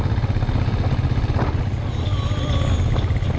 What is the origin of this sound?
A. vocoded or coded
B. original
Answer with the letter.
B